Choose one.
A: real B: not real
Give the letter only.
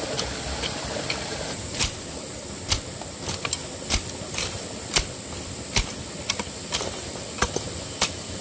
A